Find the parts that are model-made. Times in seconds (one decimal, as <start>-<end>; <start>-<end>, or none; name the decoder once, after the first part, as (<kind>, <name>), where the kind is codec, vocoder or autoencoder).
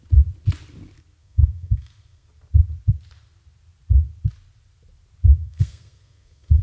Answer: 1.2-2.3 (codec, SNAC); 5.4-6.6